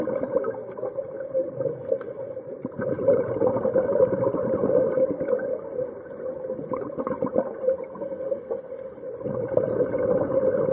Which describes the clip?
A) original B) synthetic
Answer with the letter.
A